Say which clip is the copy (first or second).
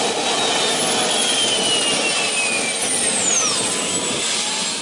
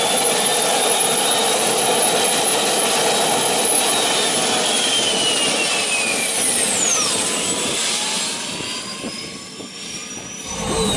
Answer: second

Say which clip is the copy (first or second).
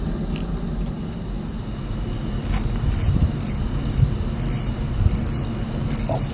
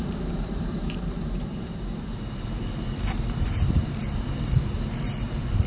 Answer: second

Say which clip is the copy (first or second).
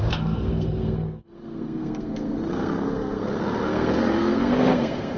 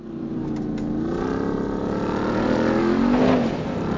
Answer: first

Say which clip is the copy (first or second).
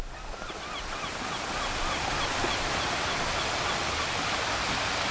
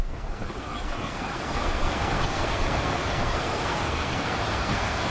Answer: second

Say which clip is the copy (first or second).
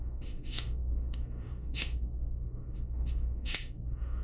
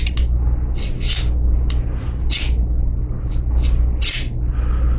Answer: first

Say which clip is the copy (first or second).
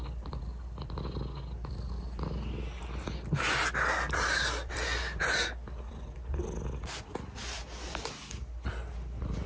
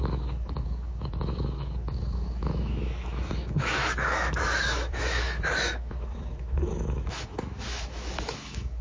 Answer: second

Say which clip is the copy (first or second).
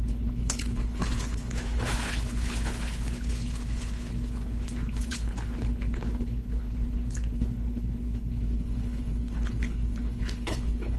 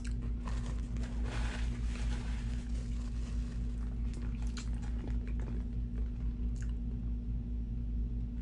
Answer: first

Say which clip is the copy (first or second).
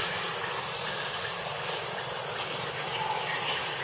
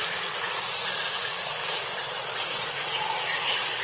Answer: second